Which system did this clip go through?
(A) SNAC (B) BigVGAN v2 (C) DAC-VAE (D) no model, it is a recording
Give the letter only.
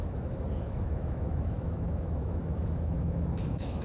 C